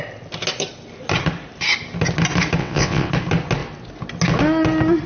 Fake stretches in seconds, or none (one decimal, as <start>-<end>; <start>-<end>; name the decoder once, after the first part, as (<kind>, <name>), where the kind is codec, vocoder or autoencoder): 2.6-3.1 (vocoder, WaveNeXt)